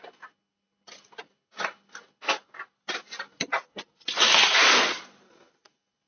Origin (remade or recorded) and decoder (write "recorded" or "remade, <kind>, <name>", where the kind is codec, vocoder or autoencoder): recorded